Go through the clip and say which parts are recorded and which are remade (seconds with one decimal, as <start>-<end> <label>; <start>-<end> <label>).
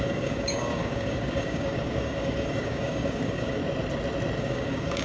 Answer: 0.0-3.6 remade; 3.6-4.4 recorded; 4.4-5.0 remade